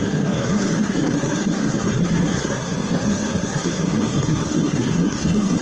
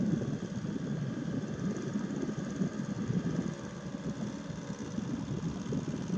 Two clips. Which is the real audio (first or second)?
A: second